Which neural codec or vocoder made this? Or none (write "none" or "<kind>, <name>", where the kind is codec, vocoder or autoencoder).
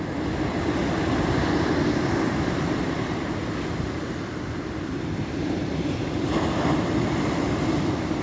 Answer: none